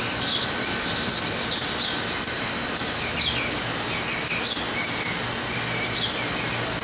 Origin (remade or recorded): recorded